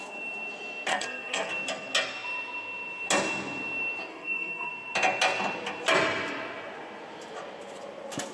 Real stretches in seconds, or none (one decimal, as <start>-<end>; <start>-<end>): 0.0-0.9; 1.5-4.1; 4.7-8.3